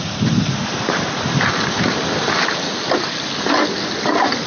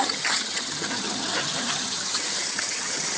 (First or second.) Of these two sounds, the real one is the first